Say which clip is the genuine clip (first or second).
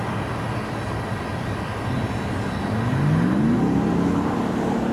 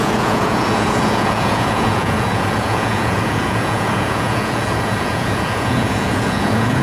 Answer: first